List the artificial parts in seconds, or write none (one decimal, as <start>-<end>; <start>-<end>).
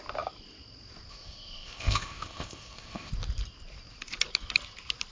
1.1-3.1